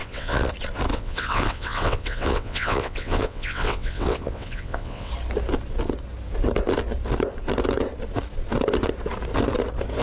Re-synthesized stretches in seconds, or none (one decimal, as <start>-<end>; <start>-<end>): 0.0-0.5; 0.9-5.1